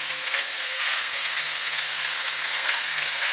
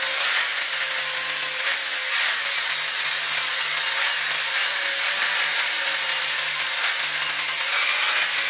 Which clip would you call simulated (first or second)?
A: first